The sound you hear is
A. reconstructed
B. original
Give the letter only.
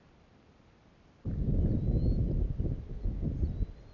B